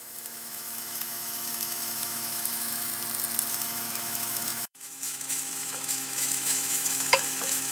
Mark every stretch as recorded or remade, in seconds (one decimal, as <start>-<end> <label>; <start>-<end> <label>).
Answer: 0.0-2.9 remade; 2.9-3.5 recorded; 3.5-7.7 remade